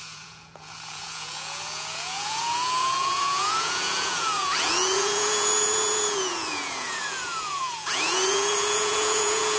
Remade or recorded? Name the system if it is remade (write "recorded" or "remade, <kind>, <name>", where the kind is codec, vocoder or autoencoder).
remade, vocoder, Vocos